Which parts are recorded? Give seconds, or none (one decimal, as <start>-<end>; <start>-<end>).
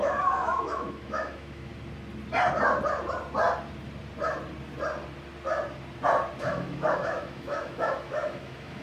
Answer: 1.7-6.4